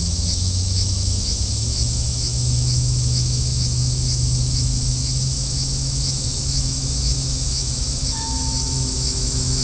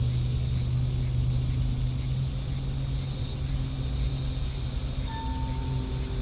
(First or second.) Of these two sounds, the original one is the second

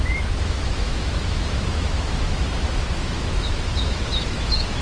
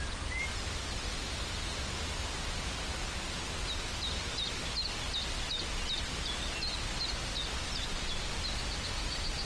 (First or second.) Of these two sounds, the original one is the second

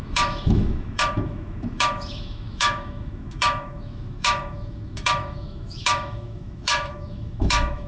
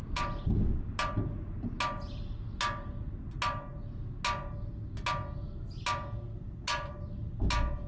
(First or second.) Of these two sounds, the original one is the second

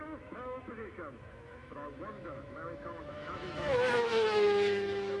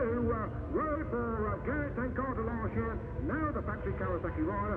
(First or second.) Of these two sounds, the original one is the second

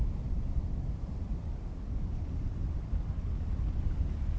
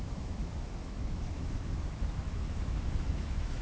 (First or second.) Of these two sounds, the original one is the first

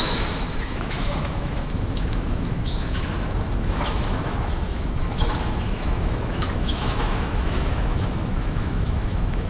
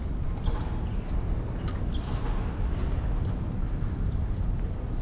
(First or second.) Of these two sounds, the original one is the second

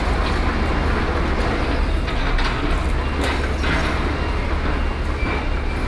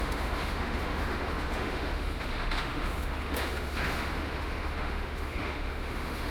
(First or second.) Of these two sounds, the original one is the first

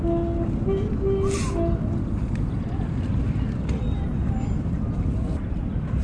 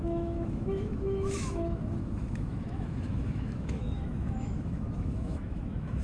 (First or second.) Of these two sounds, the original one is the first